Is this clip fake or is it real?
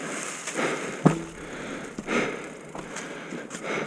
real